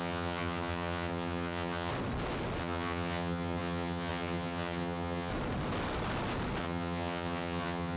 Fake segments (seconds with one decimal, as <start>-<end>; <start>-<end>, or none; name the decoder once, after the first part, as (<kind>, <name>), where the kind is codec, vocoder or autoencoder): 0.0-1.9 (vocoder, HiFi-GAN); 2.6-5.3; 6.6-8.0